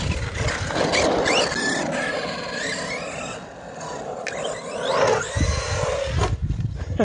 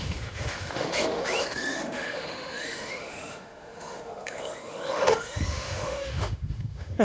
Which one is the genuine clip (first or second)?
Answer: first